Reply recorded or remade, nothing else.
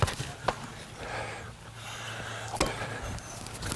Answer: recorded